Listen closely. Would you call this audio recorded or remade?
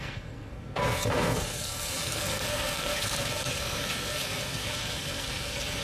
remade